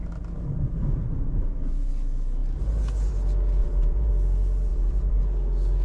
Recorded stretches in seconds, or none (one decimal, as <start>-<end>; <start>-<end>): 0.0-0.9; 1.9-3.6; 4.1-4.7; 5.2-5.8